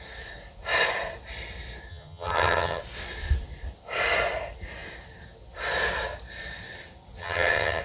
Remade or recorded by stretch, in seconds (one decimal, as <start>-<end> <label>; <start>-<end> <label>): 0.0-1.9 recorded; 1.9-2.8 remade; 2.8-7.2 recorded; 7.2-7.8 remade